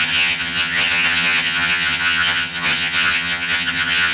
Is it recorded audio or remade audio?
remade